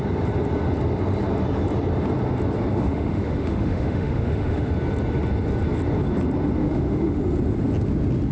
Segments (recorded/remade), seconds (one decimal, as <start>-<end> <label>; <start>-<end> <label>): 0.0-2.7 recorded; 2.7-4.7 remade; 4.7-6.6 recorded; 6.6-7.2 remade; 7.2-8.3 recorded